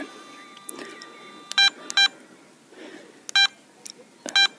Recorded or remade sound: recorded